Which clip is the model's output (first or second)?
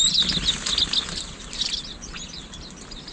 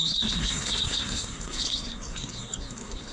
second